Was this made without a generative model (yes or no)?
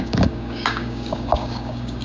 no